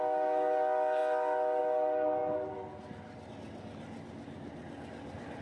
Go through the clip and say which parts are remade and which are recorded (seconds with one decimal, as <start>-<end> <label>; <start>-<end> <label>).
0.0-5.4 recorded